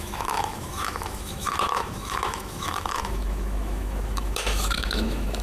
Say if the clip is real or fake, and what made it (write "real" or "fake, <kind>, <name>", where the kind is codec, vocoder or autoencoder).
fake, autoencoder, DAC-VAE